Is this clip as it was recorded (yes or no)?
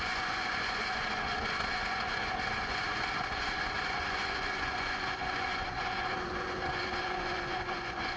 no